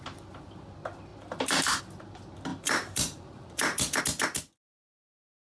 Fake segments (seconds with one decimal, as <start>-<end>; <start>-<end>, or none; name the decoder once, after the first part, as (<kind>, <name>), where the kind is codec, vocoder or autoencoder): 1.1-1.8 (vocoder, BigVGAN v2); 2.5-4.0